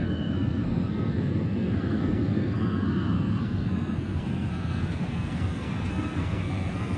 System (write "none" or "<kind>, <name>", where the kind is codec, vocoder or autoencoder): codec, SNAC